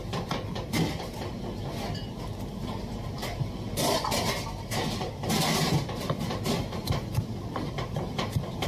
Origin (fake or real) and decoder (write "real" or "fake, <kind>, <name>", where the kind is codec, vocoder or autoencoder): real